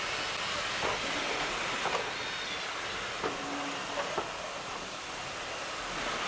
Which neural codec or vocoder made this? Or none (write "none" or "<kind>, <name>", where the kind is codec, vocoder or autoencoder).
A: none